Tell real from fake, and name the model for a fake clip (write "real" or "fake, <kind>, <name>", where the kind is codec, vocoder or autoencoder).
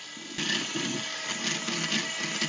real